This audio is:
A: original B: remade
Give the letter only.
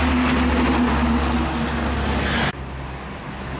A